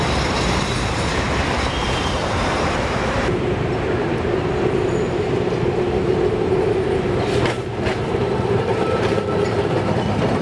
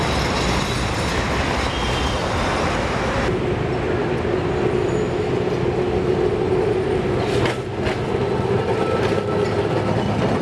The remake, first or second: first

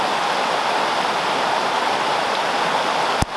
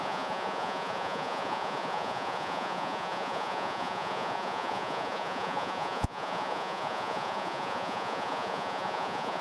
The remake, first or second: second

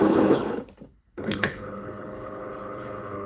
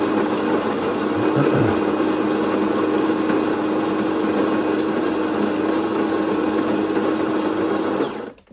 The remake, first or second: first